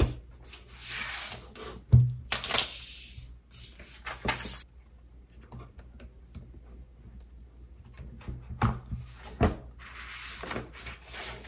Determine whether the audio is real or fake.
real